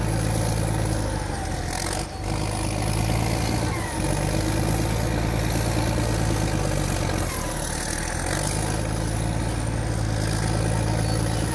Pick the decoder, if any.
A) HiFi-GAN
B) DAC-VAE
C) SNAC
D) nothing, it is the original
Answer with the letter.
D